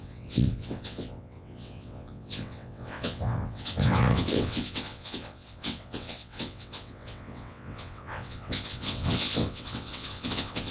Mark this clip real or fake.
fake